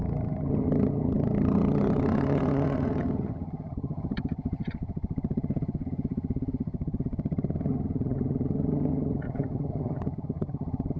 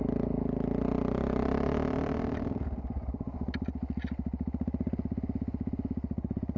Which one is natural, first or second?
second